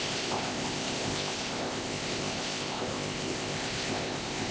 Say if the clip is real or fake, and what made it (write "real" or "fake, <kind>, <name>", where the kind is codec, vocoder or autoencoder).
fake, codec, ZipCodec